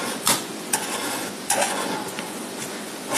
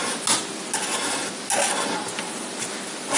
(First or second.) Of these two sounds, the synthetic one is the first